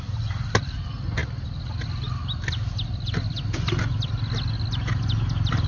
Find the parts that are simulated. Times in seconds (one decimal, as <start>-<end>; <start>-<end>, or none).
none

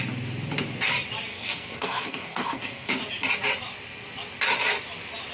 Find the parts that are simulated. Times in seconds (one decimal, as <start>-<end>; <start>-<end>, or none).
1.3-2.9

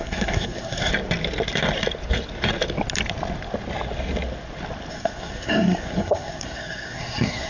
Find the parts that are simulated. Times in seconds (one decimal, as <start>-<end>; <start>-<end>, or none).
0.0-0.9; 4.9-7.5

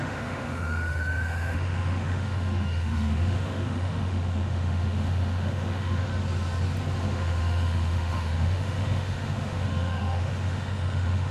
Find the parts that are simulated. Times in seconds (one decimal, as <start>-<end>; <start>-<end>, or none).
0.0-6.1; 7.0-11.3

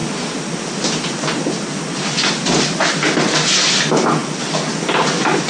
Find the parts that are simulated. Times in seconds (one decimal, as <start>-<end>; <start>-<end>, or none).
none